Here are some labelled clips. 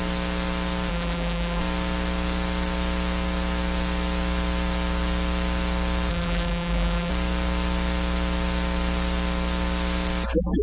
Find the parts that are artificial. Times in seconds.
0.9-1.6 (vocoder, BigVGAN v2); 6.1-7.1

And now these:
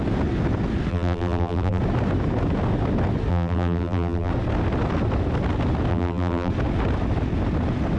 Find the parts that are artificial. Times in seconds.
0.9-1.8 (vocoder, BigVGAN v2); 3.3-4.3; 5.9-6.5